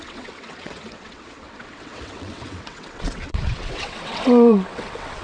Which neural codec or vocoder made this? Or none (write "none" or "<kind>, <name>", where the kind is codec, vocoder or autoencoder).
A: vocoder, WaveNeXt